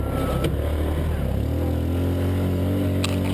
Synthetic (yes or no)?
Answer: no